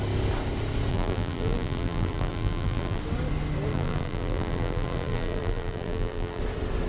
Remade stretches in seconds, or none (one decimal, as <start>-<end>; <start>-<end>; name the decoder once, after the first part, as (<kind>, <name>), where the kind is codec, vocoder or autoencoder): 0.9-3.0 (vocoder, BigVGAN v2); 3.7-6.4